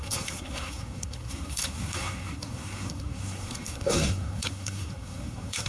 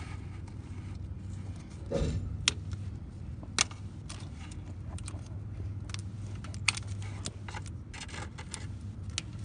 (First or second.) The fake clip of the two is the first